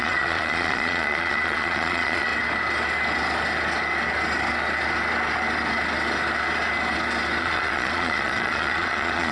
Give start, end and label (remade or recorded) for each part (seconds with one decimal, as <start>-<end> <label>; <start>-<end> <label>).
0.0-2.3 remade; 2.3-7.4 recorded; 7.4-9.3 remade